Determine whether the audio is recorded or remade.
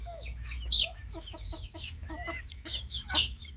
remade